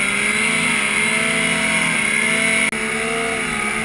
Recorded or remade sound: recorded